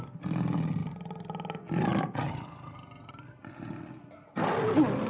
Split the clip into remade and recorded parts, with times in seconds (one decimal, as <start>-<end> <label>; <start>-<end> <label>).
0.0-5.1 recorded